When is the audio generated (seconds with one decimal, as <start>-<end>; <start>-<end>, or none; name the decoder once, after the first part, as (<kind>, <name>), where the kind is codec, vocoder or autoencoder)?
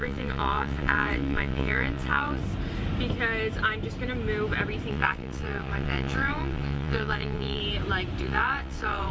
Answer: 0.0-2.4 (vocoder, WaveNeXt); 4.9-7.6; 8.2-9.1